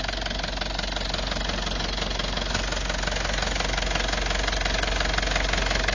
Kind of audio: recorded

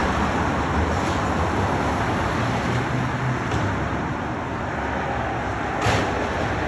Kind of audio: recorded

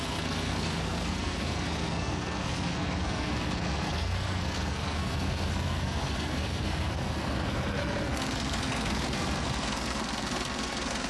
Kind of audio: remade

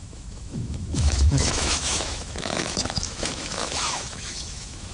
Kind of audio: remade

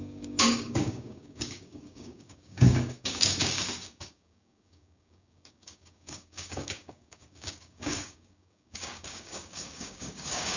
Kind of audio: remade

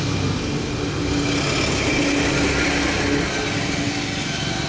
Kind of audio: recorded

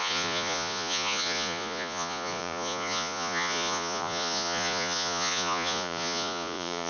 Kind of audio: remade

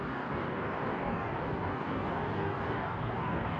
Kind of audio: remade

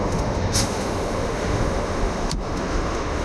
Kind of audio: remade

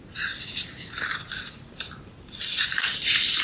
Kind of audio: recorded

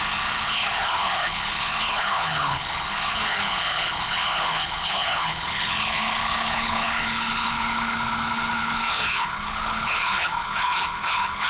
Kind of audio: remade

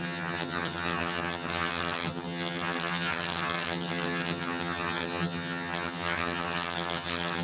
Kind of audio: remade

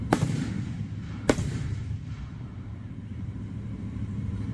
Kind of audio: remade